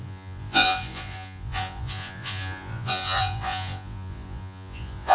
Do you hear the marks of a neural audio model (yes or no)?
yes